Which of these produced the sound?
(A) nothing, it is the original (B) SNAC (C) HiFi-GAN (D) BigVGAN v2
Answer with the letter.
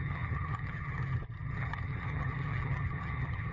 C